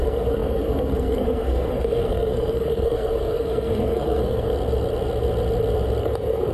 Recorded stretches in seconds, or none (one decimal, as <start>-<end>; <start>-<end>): 4.5-6.0